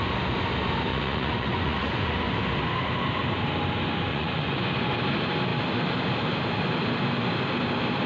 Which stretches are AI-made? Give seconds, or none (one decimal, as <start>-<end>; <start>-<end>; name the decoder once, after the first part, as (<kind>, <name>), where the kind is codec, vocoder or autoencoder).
0.9-2.1 (vocoder, Vocos); 4.1-4.7